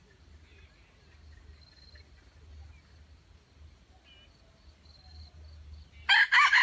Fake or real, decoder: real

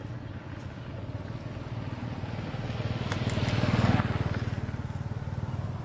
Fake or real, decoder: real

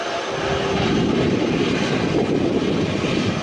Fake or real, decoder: real